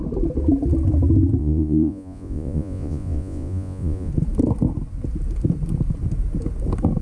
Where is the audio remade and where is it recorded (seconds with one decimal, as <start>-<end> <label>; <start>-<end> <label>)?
0.0-1.4 recorded; 1.4-4.1 remade; 4.1-7.0 recorded